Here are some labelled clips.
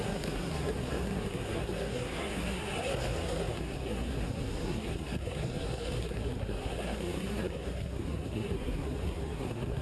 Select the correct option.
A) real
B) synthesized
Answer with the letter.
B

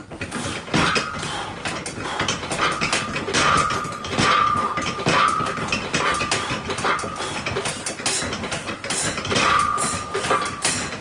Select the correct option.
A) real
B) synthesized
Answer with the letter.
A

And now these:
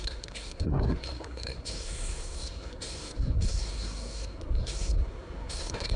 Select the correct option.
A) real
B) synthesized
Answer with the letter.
B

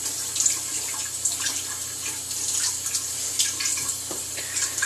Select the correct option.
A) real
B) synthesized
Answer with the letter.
A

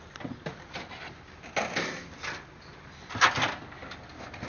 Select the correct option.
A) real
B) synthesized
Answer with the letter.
A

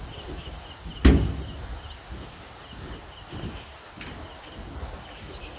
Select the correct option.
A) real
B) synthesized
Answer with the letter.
A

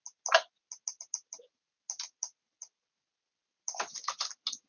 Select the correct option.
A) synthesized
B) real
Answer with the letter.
B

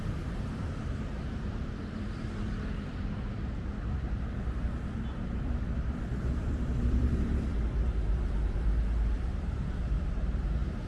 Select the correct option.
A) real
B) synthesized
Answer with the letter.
B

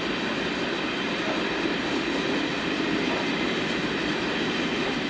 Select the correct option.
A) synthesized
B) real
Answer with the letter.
B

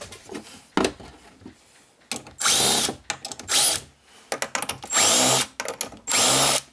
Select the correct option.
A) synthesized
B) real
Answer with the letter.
B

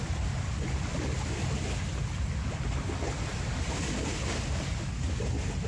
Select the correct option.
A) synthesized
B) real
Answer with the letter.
B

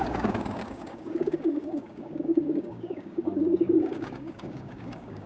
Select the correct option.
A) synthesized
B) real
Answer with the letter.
A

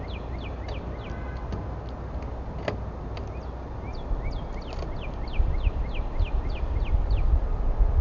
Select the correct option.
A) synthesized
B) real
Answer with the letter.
B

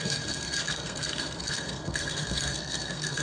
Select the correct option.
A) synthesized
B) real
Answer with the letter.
A